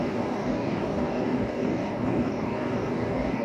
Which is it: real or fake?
fake